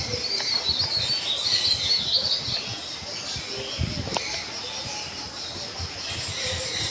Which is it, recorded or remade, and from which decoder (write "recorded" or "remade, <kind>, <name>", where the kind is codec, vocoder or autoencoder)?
recorded